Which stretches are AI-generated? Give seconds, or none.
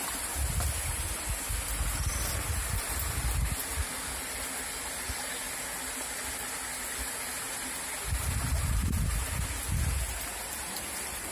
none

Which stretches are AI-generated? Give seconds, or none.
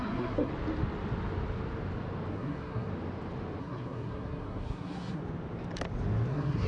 0.0-0.5; 2.3-2.9; 3.6-5.2; 6.3-6.7